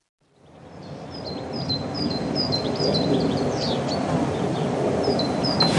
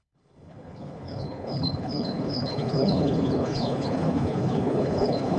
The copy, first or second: second